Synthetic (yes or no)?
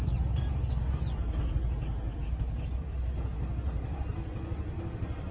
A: no